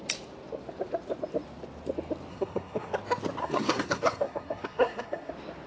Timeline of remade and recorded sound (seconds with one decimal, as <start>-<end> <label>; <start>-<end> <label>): 0.0-2.3 recorded; 2.3-2.9 remade; 2.9-3.4 recorded; 3.4-5.3 remade; 5.3-5.7 recorded